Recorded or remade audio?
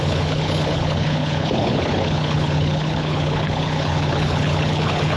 remade